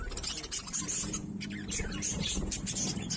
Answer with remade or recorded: remade